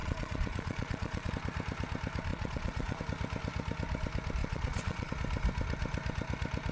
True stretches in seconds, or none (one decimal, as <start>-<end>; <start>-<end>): 1.3-2.3; 3.0-4.4; 5.1-6.7